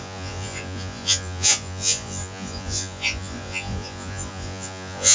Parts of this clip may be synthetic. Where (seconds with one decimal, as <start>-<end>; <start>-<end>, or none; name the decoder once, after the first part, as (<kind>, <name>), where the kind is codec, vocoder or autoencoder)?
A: 0.0-5.1 (vocoder, Vocos)